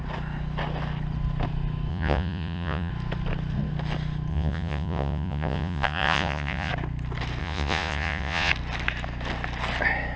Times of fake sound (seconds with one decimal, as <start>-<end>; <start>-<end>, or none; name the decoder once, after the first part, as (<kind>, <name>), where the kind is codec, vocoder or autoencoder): 1.9-2.9 (vocoder, Vocos); 4.3-6.7; 7.4-8.5